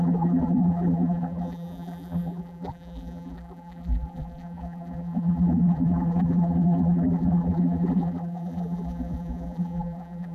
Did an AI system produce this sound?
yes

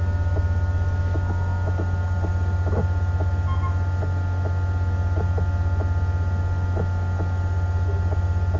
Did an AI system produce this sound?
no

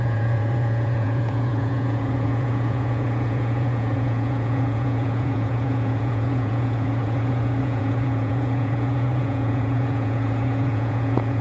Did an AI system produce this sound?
yes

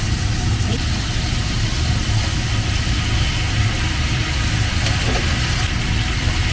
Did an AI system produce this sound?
no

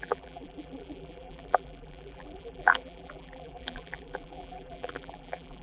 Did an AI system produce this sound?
yes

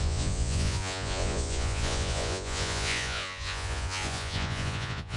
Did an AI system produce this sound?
yes